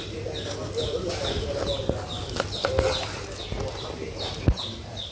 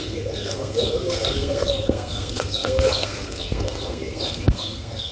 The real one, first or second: first